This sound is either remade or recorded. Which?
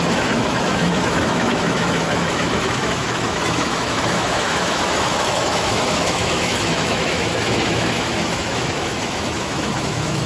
remade